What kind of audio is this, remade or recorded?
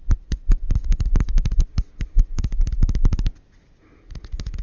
recorded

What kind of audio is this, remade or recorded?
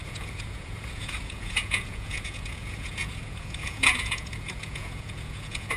remade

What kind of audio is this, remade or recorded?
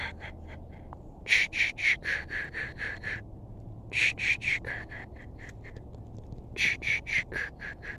recorded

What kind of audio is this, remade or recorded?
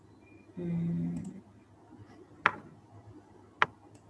recorded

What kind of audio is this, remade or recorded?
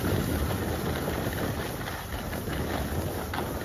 recorded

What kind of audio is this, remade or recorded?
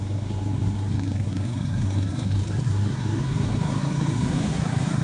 remade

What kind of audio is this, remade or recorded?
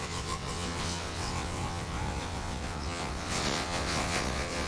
remade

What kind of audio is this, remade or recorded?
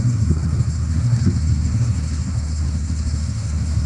remade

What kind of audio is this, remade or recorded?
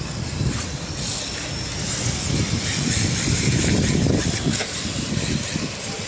recorded